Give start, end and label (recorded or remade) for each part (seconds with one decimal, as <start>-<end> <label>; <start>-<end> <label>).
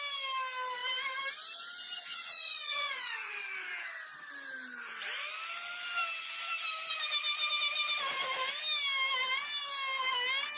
0.0-2.1 recorded; 2.1-3.3 remade; 3.3-10.6 recorded